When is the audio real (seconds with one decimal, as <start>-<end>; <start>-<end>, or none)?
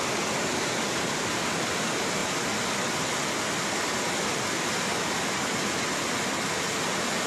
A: 0.0-7.3